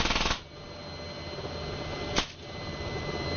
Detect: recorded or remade recorded